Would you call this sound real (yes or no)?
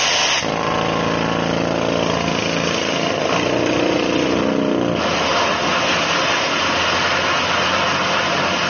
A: yes